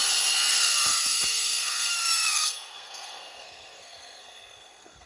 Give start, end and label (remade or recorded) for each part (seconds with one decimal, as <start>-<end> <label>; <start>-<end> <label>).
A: 0.0-0.5 recorded; 0.5-5.1 remade